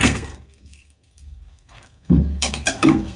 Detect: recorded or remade remade